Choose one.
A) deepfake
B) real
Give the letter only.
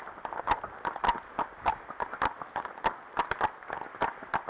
B